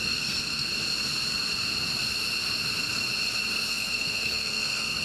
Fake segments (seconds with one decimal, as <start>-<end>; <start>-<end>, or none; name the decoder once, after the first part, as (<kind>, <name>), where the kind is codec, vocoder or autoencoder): 0.0-0.7 (codec, SNAC); 3.7-5.0